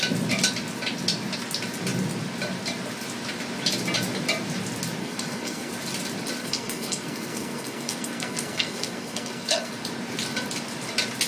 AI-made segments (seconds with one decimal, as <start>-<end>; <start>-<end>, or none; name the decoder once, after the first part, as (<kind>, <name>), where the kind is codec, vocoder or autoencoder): 5.0-5.7 (codec, SNAC); 6.4-9.7